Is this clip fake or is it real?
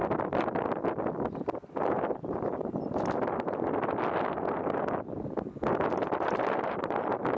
real